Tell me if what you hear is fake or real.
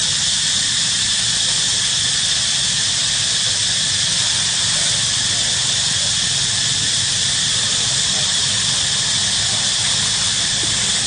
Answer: fake